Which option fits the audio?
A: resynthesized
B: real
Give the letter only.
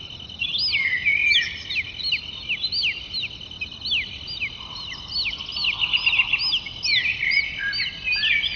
B